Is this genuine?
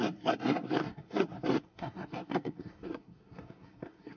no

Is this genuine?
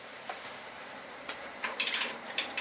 no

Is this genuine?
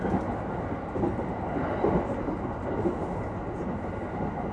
yes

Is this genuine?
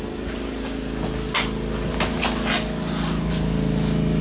yes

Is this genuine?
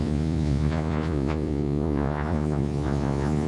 no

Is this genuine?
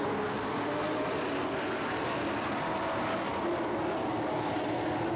yes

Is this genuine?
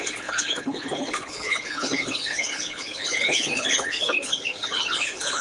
no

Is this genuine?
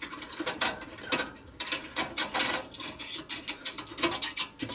yes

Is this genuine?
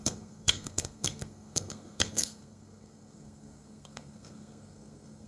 no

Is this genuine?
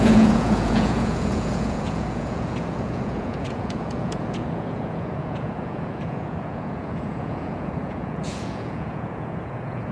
no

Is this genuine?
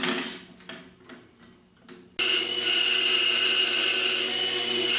yes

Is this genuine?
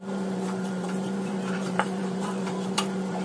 no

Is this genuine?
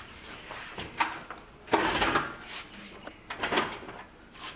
yes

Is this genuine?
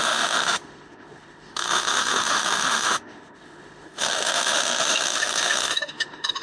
no